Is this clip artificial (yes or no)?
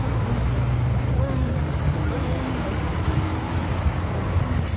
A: no